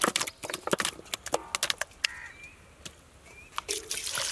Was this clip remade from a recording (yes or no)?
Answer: no